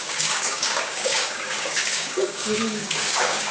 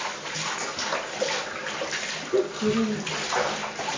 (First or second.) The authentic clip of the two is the second